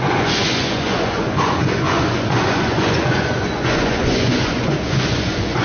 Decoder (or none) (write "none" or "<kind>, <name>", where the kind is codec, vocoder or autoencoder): vocoder, Vocos